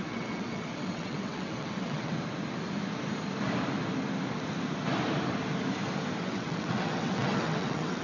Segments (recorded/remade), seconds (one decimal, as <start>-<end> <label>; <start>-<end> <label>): 0.0-2.1 remade; 2.1-6.2 recorded; 6.2-8.0 remade